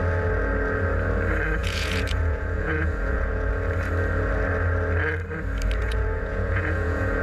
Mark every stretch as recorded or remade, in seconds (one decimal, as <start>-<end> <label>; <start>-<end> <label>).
0.0-1.6 recorded; 1.6-3.5 remade; 3.5-5.8 recorded; 5.8-7.2 remade